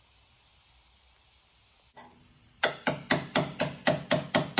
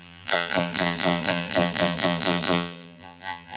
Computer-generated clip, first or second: second